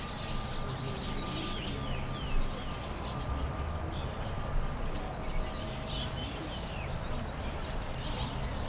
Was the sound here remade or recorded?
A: recorded